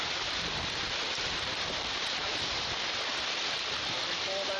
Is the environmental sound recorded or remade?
remade